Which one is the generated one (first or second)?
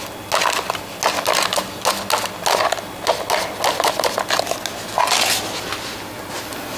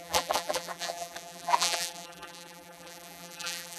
second